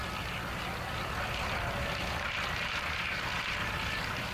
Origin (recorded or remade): recorded